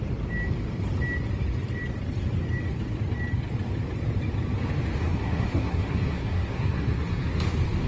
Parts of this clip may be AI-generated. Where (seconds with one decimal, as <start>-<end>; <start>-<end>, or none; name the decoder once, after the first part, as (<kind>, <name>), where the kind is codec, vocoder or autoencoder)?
5.0-7.3 (codec, SNAC)